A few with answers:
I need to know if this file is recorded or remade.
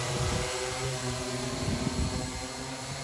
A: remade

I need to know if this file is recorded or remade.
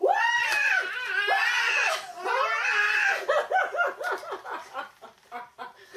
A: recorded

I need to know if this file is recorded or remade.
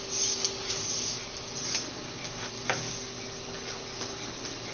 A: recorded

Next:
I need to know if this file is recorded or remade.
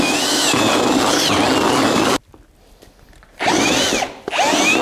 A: recorded